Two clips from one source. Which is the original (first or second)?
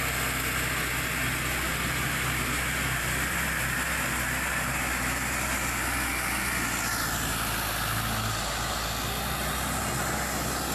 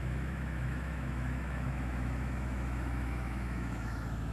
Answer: first